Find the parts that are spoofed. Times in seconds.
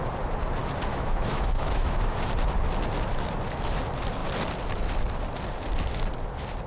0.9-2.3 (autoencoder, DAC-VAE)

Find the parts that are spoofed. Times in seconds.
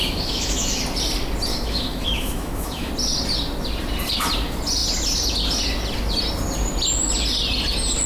0.0-0.8 (autoencoder, DAC-VAE); 1.5-2.9